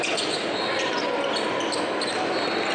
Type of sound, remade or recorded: recorded